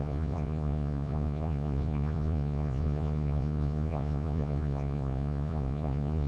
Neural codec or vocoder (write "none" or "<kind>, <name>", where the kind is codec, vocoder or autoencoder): vocoder, Vocos